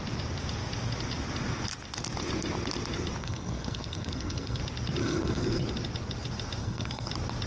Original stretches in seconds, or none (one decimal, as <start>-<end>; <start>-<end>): 0.0-3.2; 4.6-5.0; 5.6-6.6; 7.1-7.5